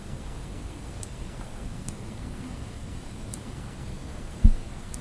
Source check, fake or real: fake